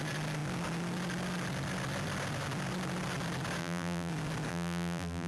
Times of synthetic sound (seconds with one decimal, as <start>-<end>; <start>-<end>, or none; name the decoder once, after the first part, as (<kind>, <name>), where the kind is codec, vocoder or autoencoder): 3.6-4.1 (vocoder, BigVGAN v2); 4.5-5.3